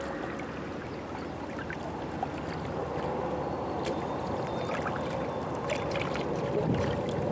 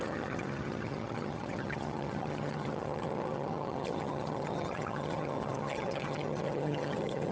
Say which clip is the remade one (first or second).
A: second